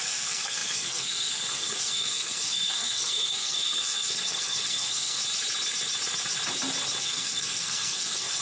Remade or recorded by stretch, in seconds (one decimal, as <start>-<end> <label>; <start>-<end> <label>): 0.0-5.2 remade; 5.2-7.0 recorded; 7.0-8.4 remade